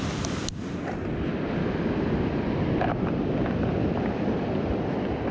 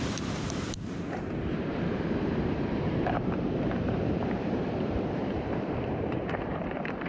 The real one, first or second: first